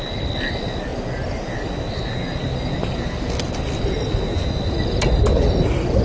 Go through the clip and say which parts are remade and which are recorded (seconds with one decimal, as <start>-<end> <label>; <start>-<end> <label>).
0.0-6.0 recorded